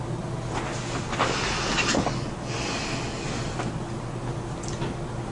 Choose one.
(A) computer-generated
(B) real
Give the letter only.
B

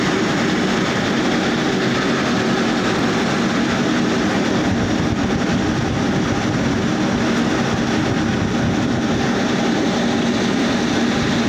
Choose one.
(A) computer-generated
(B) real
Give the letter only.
B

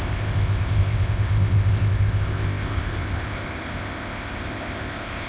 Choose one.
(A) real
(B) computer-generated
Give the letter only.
B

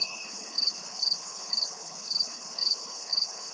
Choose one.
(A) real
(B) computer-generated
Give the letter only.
B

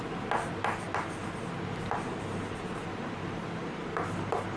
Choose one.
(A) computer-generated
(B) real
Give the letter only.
B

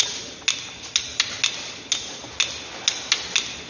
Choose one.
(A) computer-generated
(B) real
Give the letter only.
B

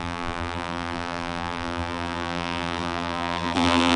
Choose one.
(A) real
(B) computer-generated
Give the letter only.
B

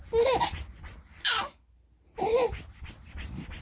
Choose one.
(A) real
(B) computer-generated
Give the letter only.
A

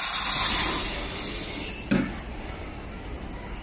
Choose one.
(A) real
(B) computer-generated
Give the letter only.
A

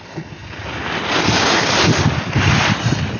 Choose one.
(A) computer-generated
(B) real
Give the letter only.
B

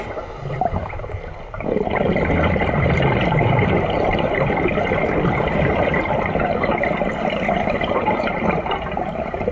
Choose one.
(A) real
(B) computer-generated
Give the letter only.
B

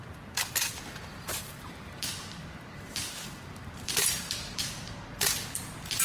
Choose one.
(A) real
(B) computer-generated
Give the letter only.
B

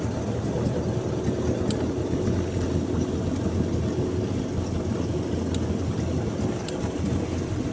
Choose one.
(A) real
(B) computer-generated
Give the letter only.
A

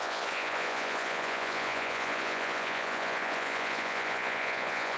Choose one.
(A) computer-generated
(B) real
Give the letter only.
A